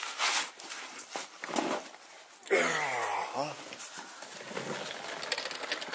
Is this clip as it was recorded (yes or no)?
yes